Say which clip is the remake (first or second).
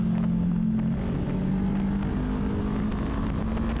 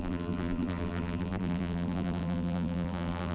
second